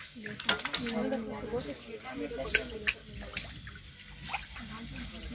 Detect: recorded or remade recorded